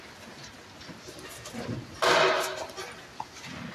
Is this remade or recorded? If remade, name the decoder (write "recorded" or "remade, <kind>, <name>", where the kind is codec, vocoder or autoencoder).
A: recorded